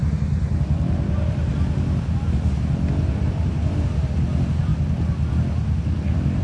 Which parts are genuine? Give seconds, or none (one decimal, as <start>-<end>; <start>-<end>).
0.0-6.4